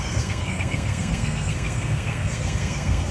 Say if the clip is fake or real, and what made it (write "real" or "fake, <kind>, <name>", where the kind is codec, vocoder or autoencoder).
fake, codec, SNAC